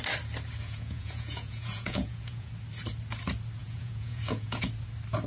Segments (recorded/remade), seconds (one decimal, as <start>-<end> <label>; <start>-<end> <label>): 0.0-0.6 recorded; 0.6-2.5 remade; 2.5-3.6 recorded; 3.6-4.6 remade; 4.6-5.3 recorded